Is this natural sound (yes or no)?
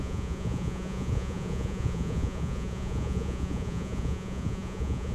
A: no